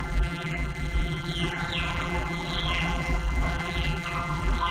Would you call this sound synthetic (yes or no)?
yes